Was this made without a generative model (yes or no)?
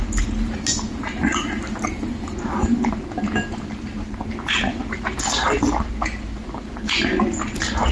yes